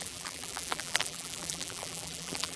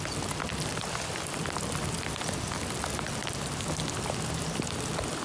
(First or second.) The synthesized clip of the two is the first